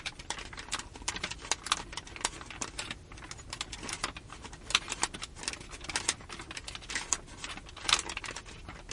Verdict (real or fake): real